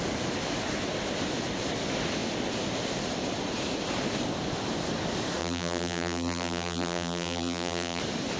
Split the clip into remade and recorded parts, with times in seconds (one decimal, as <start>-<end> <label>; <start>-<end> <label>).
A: 0.0-5.4 recorded; 5.4-8.0 remade; 8.0-8.4 recorded